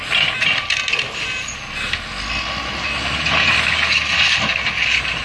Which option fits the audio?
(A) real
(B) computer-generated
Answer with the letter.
A